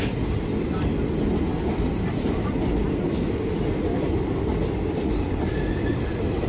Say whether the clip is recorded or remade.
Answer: recorded